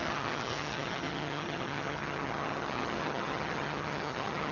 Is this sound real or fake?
fake